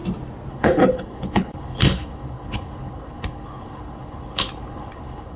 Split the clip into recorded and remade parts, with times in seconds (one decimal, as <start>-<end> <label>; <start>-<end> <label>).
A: 0.0-0.5 recorded; 0.5-5.4 remade